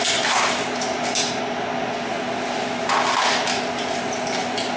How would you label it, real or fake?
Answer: real